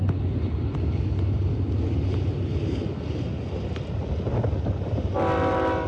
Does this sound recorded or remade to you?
recorded